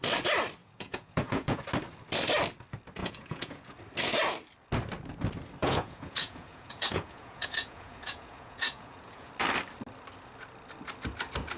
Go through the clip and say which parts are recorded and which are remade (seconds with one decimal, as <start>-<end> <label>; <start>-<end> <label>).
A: 0.0-0.6 recorded; 0.6-1.6 remade; 1.6-3.0 recorded; 3.0-3.7 remade; 3.7-5.6 recorded; 5.6-9.3 remade; 9.3-11.6 recorded